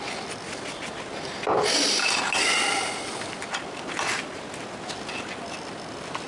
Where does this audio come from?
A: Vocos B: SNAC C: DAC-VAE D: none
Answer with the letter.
D